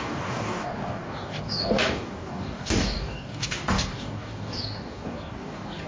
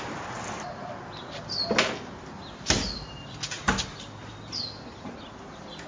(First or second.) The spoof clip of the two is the first